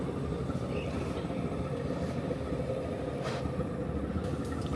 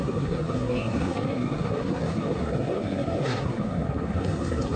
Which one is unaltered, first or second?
first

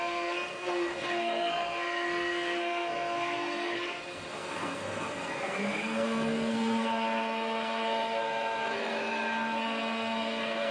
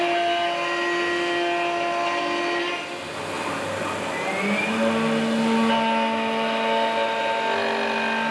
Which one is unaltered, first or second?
second